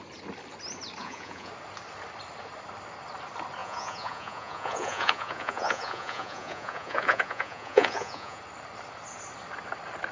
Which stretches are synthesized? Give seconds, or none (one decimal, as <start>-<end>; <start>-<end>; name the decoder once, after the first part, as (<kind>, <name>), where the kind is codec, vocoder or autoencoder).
1.0-1.5 (vocoder, Vocos); 3.6-8.4